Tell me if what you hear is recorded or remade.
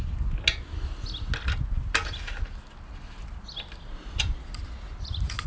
recorded